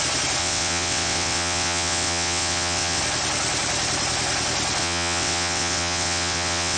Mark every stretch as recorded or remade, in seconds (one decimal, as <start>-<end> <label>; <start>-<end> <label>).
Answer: 0.0-0.4 recorded; 0.4-3.0 remade; 3.0-4.8 recorded; 4.8-6.8 remade